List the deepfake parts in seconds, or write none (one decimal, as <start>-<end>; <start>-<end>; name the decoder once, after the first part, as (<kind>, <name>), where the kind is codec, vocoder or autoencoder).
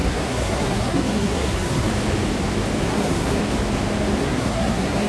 0.0-1.9 (codec, SNAC); 2.8-3.4; 4.2-5.1